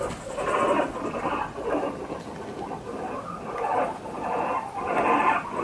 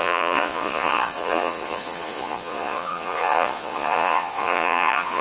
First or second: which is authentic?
first